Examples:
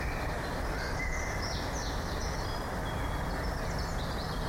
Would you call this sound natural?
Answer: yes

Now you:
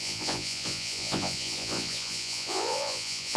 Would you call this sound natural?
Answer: no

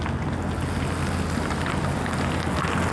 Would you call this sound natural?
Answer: yes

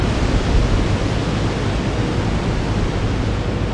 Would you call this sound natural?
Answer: yes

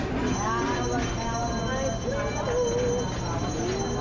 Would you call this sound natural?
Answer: yes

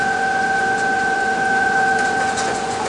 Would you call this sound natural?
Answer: no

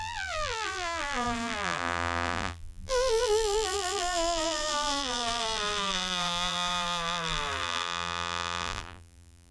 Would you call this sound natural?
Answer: no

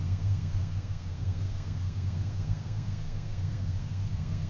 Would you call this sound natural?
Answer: no